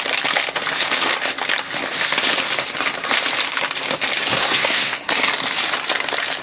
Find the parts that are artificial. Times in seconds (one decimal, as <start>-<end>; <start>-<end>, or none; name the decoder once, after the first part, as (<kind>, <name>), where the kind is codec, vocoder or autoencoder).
4.3-5.1 (codec, SNAC)